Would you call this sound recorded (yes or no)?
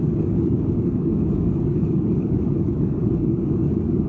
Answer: no